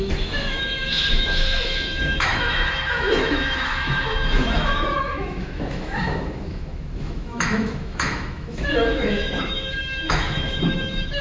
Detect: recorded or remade remade